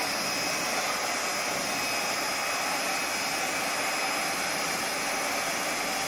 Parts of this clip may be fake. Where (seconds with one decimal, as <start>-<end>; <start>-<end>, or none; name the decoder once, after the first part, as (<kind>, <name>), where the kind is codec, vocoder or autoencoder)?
4.2-4.8 (vocoder, BigVGAN v2)